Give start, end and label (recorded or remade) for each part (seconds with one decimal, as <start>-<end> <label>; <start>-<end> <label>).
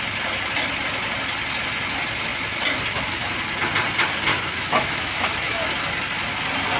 0.0-4.3 recorded; 4.3-5.6 remade; 5.6-6.8 recorded